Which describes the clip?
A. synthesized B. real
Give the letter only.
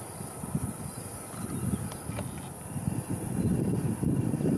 B